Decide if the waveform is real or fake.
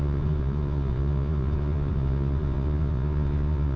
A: fake